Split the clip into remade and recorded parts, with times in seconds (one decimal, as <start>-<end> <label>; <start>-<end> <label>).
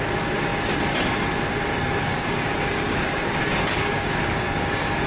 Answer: 0.0-2.1 recorded; 2.1-5.1 remade